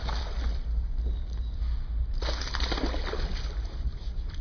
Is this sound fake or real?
real